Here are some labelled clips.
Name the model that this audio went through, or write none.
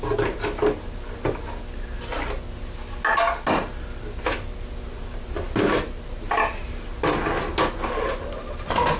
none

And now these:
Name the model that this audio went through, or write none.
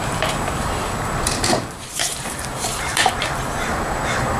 vocoder, BigVGAN v2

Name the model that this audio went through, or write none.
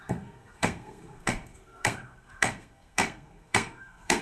codec, SNAC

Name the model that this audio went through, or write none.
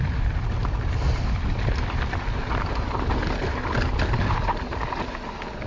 none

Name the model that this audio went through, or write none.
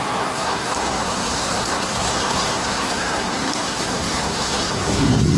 codec, SNAC